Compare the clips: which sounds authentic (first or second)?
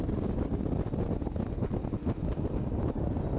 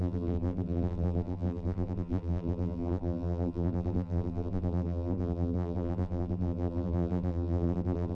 first